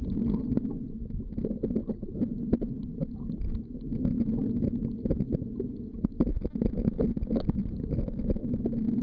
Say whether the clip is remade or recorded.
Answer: recorded